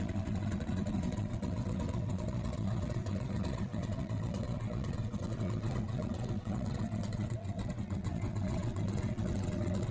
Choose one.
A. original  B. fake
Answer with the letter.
B